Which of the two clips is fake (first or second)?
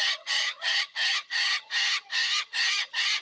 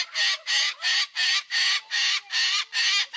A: first